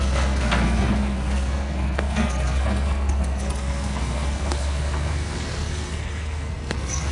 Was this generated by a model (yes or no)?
yes